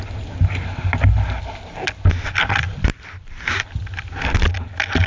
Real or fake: real